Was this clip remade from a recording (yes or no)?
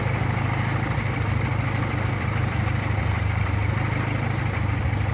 no